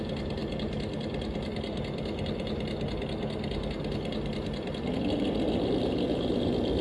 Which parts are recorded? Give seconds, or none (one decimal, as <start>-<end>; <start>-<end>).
0.0-6.8